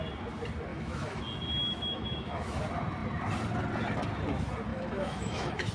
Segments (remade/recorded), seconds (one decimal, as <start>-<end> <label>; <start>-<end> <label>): 0.0-0.7 recorded; 0.7-1.2 remade; 1.2-1.6 recorded; 1.6-2.6 remade; 2.6-4.7 recorded; 4.7-5.7 remade